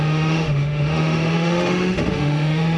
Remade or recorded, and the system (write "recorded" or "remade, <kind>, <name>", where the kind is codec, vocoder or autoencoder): remade, autoencoder, DAC-VAE